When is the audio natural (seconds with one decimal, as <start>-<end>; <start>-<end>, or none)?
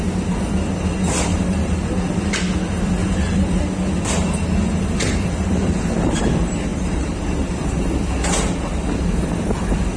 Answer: 0.0-1.3; 1.9-3.0; 3.6-6.7; 7.5-10.0